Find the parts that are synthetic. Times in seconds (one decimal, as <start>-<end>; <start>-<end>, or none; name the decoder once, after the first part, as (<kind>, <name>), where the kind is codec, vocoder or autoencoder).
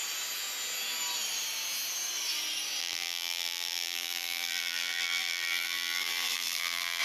2.8-7.0 (vocoder, BigVGAN v2)